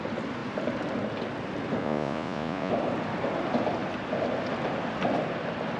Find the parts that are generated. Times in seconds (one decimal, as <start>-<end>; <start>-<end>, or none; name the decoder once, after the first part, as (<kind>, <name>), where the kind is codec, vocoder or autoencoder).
1.8-2.7 (vocoder, Vocos)